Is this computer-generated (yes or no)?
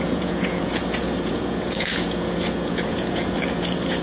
yes